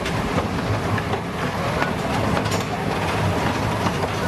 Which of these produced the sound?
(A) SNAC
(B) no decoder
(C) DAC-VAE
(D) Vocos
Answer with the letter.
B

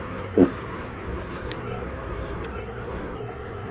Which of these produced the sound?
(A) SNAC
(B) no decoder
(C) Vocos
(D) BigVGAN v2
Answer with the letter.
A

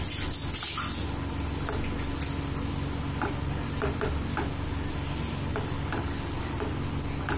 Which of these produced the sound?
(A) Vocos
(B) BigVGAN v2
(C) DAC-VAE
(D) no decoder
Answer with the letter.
D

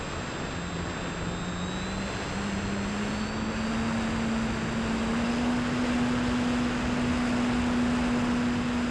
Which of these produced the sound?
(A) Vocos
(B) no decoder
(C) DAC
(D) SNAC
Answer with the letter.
B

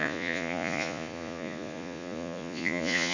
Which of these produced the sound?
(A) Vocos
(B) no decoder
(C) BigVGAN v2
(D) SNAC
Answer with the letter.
A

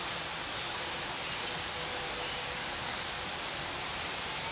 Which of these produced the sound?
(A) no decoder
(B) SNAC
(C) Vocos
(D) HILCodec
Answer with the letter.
A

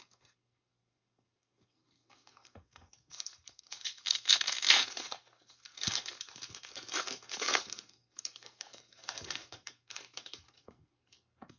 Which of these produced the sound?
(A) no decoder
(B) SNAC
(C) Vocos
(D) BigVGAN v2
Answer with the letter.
B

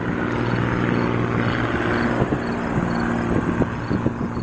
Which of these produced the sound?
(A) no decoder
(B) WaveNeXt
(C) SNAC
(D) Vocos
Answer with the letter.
A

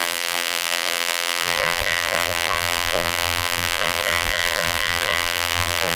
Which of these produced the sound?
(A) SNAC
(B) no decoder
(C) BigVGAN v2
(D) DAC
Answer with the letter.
C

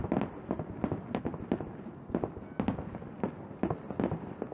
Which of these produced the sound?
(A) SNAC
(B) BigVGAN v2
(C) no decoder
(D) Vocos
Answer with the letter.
C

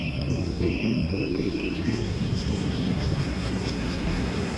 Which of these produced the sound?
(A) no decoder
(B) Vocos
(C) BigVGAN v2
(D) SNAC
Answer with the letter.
D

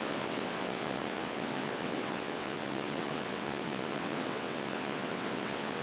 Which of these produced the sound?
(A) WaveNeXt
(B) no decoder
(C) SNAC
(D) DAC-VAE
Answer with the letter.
A